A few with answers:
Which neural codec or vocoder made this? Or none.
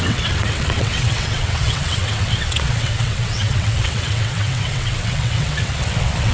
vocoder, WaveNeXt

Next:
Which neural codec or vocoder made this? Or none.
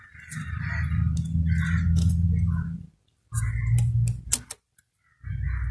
none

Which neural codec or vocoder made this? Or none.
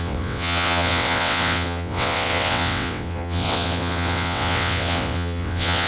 vocoder, WaveNeXt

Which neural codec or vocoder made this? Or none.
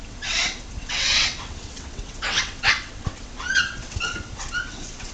vocoder, WaveNeXt